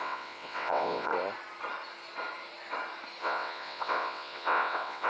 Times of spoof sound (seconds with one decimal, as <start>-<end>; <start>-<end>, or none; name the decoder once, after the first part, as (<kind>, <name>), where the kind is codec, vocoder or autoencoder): 0.0-1.1 (vocoder, WaveNeXt); 3.2-5.1

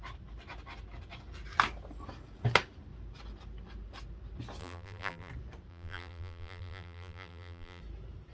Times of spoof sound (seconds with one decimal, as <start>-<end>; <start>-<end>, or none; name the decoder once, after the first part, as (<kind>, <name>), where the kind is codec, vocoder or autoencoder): 4.6-5.3 (vocoder, BigVGAN v2); 5.7-7.8

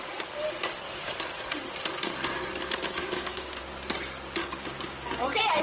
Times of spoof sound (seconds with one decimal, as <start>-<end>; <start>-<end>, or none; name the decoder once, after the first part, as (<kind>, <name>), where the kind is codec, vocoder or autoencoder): 3.0-3.6 (codec, DAC); 4.4-5.6